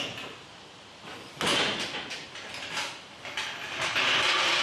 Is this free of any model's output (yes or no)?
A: yes